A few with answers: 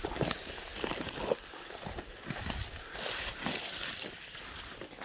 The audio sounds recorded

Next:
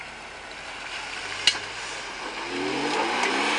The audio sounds recorded